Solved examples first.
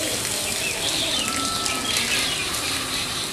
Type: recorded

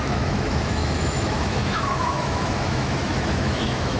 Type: remade